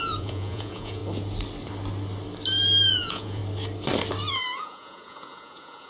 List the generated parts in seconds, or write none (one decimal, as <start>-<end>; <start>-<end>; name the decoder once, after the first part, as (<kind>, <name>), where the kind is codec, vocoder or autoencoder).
0.0-1.0 (vocoder, Vocos); 2.9-3.4; 4.3-5.9